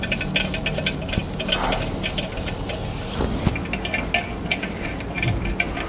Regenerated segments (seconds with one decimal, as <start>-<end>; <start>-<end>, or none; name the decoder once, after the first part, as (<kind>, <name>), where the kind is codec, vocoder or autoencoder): none